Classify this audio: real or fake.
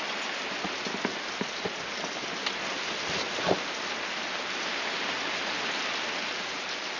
real